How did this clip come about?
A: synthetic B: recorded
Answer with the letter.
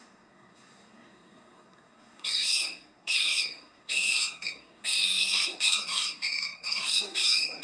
A